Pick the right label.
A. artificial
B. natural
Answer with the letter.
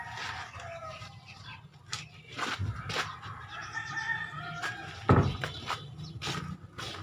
B